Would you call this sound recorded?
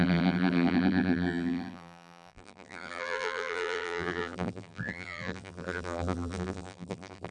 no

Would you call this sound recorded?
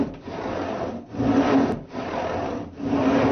yes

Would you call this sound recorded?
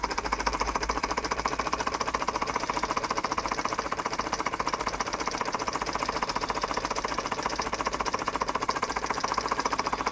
yes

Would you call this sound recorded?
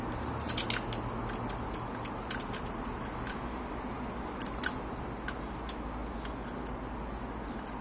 yes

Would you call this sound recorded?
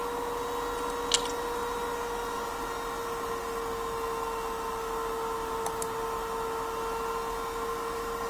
yes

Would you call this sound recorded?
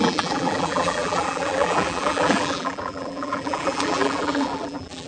no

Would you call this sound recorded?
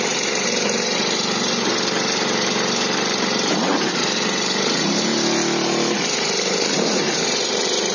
no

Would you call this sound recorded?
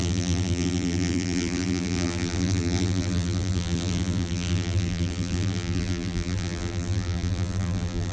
no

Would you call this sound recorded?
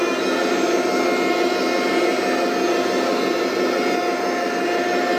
yes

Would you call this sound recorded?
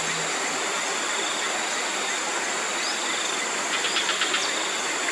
yes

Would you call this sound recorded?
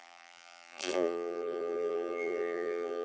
no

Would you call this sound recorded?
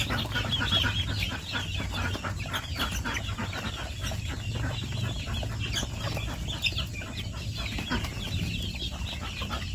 yes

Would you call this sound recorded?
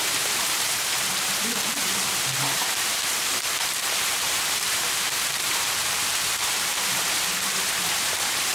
no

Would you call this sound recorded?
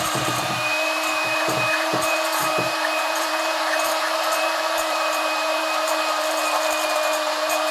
no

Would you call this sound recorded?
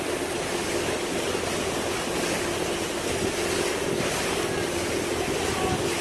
yes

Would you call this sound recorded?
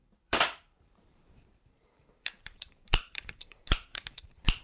no